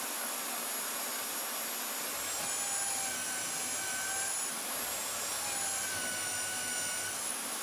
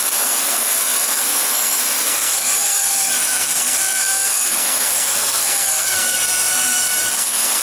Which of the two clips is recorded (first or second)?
first